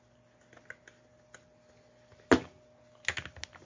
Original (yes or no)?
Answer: yes